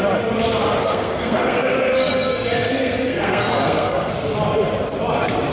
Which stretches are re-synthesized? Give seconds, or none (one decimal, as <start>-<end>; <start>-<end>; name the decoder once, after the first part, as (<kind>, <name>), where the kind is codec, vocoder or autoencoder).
0.8-4.1 (codec, SNAC)